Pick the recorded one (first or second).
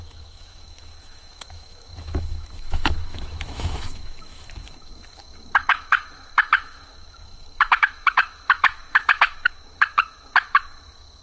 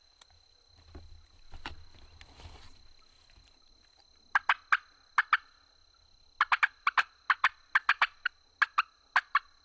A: second